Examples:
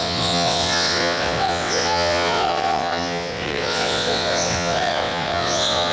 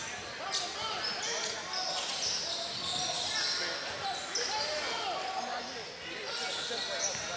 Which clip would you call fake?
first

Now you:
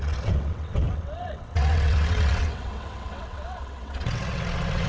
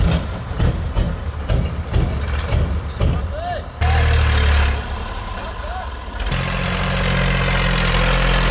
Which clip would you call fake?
first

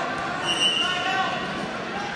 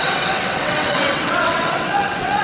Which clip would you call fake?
second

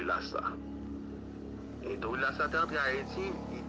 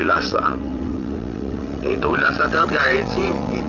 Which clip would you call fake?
second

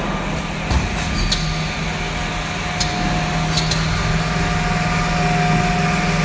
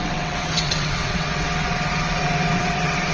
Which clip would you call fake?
second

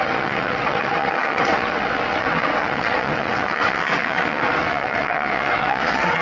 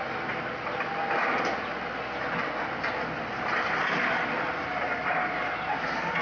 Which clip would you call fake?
first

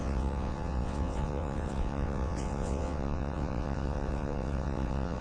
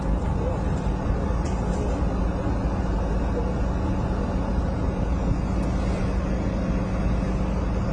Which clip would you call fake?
first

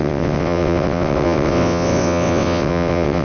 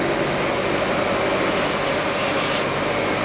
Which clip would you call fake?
first